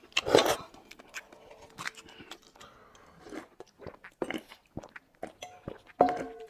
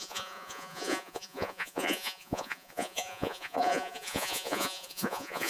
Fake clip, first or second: second